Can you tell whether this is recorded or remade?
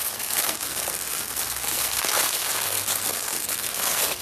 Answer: remade